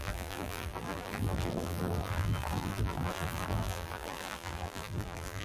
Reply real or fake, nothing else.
fake